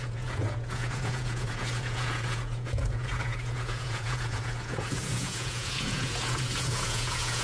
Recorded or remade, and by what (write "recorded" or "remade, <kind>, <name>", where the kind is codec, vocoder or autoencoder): remade, vocoder, Vocos